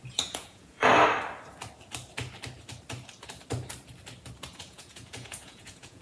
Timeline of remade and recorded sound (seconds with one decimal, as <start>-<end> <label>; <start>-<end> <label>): 0.0-0.9 remade; 0.9-4.5 recorded; 4.5-6.0 remade